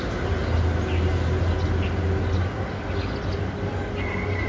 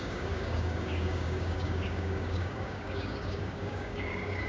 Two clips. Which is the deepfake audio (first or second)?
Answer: second